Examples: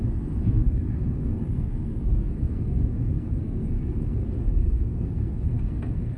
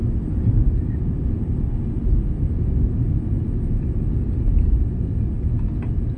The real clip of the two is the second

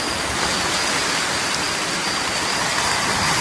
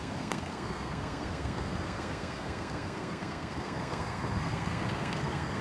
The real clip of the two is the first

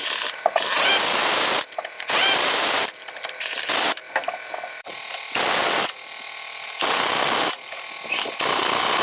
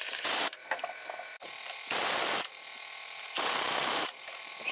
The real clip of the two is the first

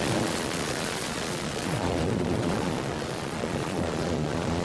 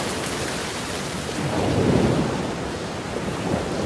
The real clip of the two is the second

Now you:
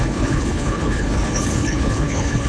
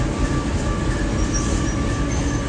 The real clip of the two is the second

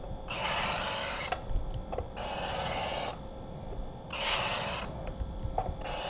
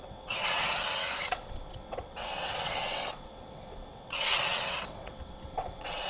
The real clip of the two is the first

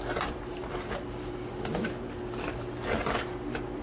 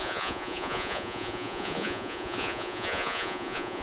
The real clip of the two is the first